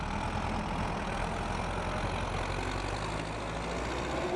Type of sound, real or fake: real